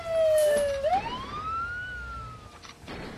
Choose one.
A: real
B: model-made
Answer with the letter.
A